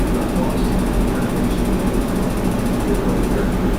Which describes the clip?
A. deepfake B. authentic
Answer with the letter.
B